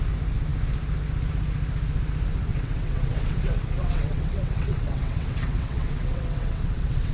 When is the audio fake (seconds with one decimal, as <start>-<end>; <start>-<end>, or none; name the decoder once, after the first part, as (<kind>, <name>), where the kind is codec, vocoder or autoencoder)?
2.5-7.1 (vocoder, WaveNeXt)